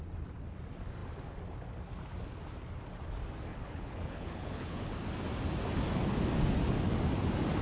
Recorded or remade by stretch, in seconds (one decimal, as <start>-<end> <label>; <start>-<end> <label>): 0.0-3.5 recorded; 3.5-4.9 remade; 4.9-7.6 recorded